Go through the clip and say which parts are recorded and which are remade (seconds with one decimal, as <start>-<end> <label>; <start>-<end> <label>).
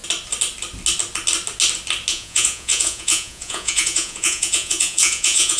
0.0-2.1 recorded; 2.1-5.6 remade